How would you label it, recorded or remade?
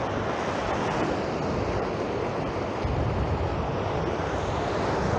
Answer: recorded